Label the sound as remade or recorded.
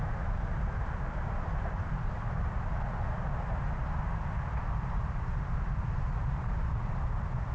recorded